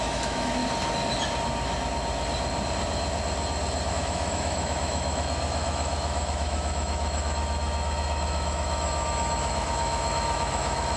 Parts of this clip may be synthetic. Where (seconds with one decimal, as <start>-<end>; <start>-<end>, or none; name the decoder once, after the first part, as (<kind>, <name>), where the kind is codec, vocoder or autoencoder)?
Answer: 0.0-0.6 (autoencoder, DAC-VAE); 3.9-11.0